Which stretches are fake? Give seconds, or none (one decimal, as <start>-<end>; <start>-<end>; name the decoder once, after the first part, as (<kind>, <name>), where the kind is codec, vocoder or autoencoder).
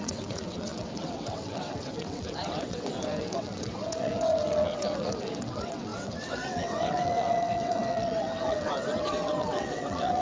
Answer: 0.0-10.2 (vocoder, WaveNeXt)